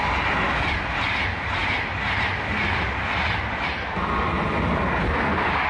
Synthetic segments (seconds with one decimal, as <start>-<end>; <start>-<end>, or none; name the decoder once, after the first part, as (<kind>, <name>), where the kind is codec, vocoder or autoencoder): none